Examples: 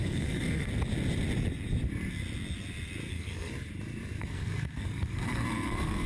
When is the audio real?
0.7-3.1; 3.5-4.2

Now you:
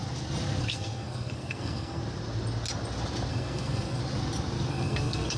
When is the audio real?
0.0-0.6; 2.0-3.3; 4.0-4.7

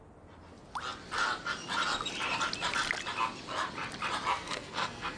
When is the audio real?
0.0-4.3

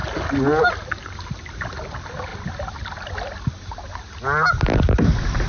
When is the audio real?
0.0-5.5

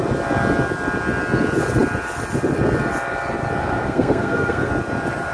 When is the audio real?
0.0-3.6; 4.7-5.3